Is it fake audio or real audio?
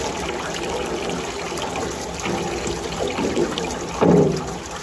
real